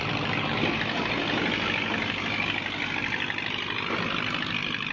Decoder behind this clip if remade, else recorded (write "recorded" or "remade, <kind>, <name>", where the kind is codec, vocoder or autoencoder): recorded